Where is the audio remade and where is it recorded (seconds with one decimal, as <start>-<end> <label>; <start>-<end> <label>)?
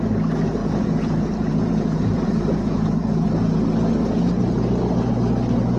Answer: 0.0-0.6 recorded; 0.6-3.6 remade; 3.6-5.8 recorded